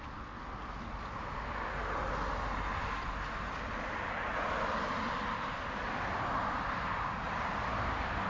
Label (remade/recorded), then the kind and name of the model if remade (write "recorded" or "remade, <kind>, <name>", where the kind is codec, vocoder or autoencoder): recorded